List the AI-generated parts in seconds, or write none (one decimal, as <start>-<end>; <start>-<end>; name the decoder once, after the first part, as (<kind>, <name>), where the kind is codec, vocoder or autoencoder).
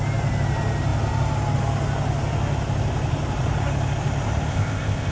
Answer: 4.5-5.1 (codec, ZipCodec)